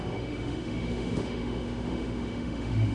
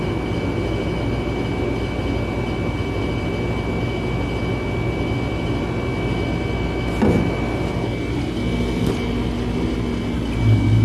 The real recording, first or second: second